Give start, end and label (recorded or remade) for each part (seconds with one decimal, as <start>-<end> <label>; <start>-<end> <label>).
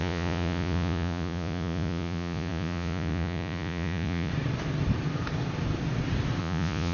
0.0-4.3 remade; 4.3-6.4 recorded; 6.4-6.9 remade